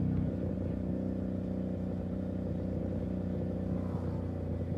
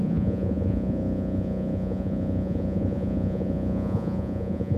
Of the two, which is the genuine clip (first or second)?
first